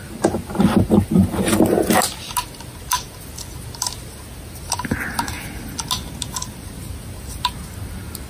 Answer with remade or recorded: recorded